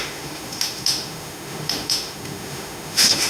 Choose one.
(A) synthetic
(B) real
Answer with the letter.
A